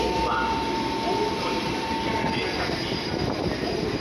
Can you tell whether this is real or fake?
real